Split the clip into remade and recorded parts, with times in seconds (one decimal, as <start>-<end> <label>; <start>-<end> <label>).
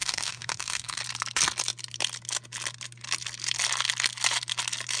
0.0-1.0 remade; 1.0-5.0 recorded